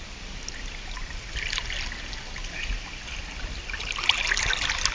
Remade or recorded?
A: recorded